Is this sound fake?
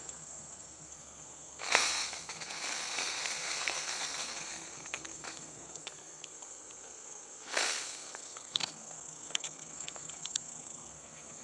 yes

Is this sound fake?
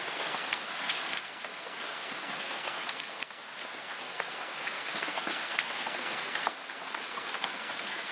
yes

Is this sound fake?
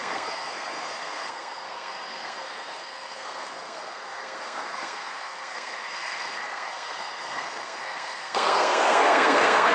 yes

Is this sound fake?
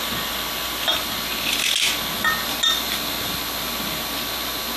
no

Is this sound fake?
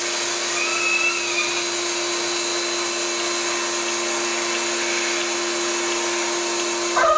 no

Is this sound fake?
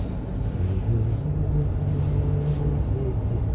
no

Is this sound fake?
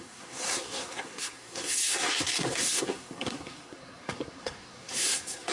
yes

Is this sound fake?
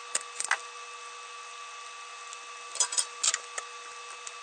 no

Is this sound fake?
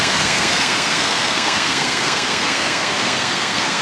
yes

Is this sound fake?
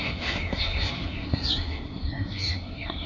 yes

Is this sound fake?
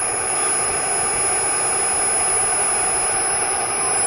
no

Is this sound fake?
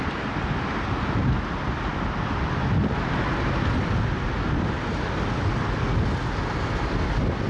no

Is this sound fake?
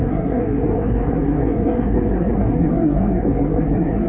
yes